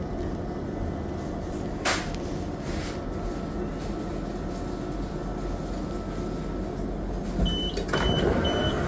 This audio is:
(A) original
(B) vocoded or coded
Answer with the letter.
A